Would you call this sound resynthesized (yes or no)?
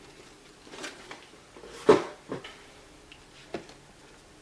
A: no